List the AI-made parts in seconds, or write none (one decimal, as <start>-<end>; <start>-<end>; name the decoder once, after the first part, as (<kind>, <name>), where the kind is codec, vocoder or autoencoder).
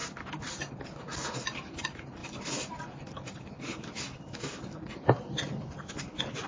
none